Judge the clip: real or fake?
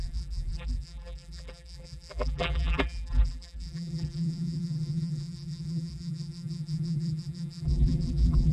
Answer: fake